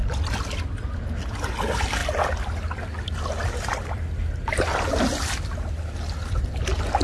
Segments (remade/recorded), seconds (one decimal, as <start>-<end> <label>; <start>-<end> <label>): 0.0-7.0 recorded